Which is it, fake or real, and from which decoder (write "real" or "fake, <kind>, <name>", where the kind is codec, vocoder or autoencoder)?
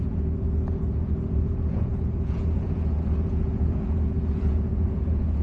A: fake, vocoder, Vocos